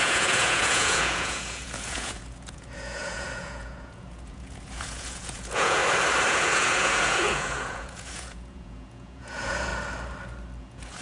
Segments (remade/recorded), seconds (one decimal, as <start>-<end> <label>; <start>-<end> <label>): 0.0-5.8 remade; 5.8-6.3 recorded; 6.3-9.7 remade; 9.7-10.6 recorded; 10.6-11.0 remade